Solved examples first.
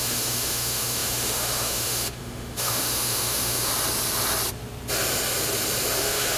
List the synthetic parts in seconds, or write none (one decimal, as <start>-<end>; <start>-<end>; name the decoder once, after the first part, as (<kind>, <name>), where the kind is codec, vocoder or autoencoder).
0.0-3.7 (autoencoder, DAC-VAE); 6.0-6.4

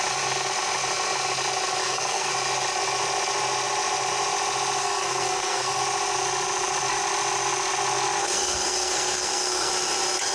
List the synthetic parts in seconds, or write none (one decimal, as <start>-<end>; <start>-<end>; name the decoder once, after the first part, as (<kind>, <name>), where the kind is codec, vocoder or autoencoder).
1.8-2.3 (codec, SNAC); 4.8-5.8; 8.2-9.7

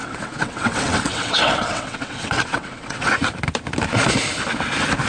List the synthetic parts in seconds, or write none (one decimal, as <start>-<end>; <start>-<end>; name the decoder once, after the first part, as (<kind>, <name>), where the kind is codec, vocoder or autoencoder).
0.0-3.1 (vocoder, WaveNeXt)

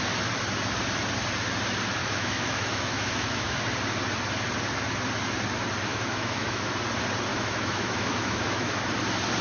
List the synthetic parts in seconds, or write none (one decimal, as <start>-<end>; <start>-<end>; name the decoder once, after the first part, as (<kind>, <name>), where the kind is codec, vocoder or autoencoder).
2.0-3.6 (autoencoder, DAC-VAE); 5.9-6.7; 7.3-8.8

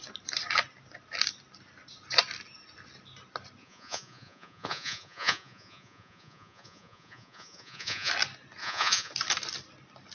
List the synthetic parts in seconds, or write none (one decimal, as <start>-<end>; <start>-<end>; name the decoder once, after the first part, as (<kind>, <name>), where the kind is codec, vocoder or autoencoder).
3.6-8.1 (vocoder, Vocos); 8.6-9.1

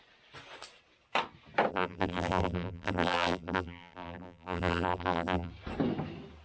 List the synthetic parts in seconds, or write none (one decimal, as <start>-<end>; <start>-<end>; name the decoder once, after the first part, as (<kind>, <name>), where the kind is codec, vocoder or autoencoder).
1.7-5.5 (vocoder, BigVGAN v2)